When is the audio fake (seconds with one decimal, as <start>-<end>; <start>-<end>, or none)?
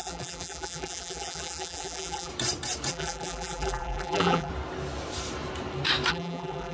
0.0-2.3; 2.9-4.5; 6.1-6.7